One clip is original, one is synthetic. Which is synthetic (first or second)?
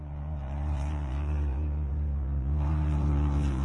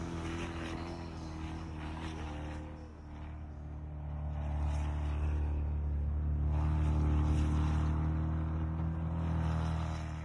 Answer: first